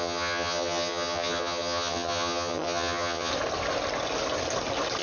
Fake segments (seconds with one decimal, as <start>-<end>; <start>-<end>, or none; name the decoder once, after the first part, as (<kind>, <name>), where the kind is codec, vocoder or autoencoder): 0.0-3.3 (vocoder, HiFi-GAN)